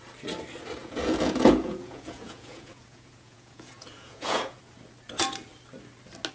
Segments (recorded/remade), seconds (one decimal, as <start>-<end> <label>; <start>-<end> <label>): 0.0-0.8 recorded; 0.8-4.6 remade; 4.6-6.3 recorded